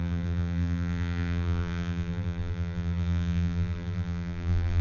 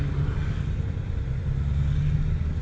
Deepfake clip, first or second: first